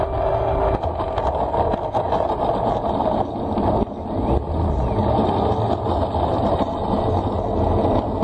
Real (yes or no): yes